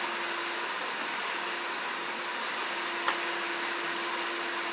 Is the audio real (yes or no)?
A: yes